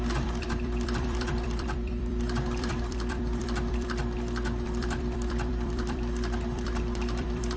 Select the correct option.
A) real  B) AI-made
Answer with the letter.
B